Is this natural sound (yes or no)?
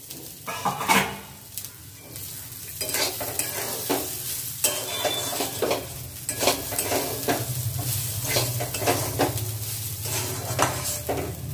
yes